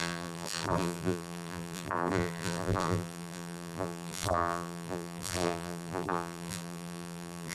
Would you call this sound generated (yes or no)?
yes